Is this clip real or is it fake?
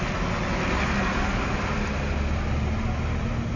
real